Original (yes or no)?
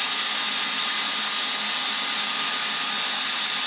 yes